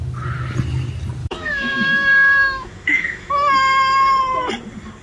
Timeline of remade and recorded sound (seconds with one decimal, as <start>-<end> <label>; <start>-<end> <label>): 0.0-1.2 recorded; 1.2-4.2 remade; 4.2-5.0 recorded